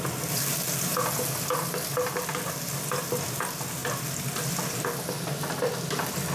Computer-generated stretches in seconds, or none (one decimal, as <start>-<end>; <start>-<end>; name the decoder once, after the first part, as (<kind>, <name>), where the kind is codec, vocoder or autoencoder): none

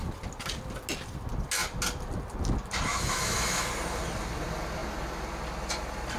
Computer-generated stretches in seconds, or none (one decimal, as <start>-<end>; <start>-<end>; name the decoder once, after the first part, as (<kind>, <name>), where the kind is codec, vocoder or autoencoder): 2.9-3.7 (autoencoder, DAC-VAE)

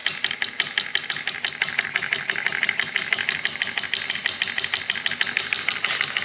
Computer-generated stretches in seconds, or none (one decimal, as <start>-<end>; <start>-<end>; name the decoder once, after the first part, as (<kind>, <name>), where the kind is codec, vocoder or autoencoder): none

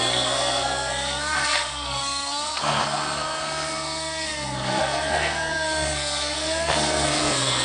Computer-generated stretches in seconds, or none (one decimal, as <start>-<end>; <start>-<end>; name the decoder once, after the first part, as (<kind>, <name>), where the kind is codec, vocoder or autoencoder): 0.0-7.6 (codec, SNAC)

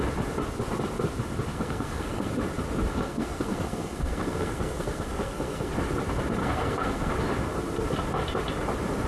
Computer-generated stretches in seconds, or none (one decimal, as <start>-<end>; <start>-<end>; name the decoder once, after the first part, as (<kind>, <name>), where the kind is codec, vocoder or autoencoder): 1.5-2.3 (codec, SNAC); 2.9-5.7; 6.4-7.1

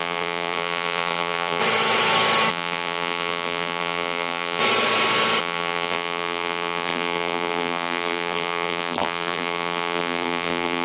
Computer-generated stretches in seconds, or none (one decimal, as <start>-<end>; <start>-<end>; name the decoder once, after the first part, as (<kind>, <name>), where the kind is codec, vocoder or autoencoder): 0.0-1.6 (vocoder, BigVGAN v2); 2.5-4.6; 5.4-10.8